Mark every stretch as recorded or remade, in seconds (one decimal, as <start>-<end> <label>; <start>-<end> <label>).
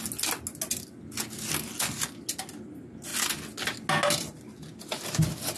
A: 0.0-5.6 recorded